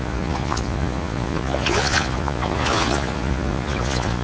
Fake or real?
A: fake